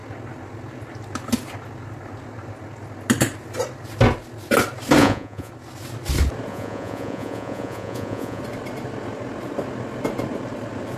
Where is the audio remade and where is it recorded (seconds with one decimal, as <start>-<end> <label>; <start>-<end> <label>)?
0.0-5.0 recorded; 5.0-5.5 remade; 5.5-6.5 recorded; 6.5-8.4 remade; 8.4-11.0 recorded